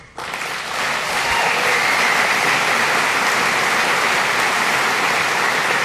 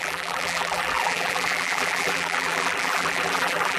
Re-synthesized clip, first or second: second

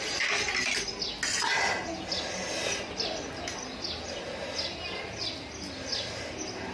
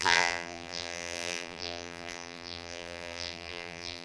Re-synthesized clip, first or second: second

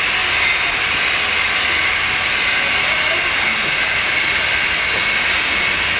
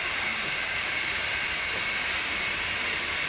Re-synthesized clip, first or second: second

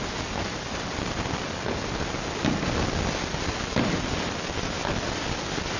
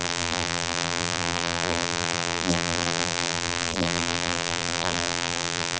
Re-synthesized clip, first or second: second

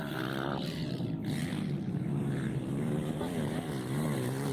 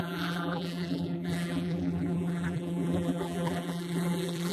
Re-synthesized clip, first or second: second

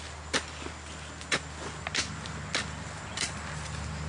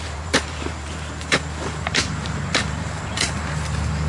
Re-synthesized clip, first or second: second